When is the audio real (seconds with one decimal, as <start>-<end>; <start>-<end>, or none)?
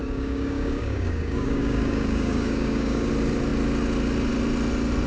3.1-5.1